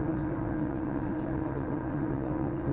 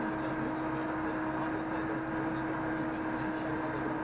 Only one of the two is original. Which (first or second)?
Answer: second